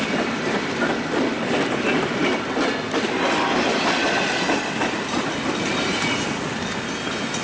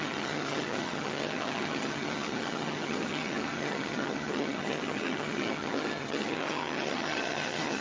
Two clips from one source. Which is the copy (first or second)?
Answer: second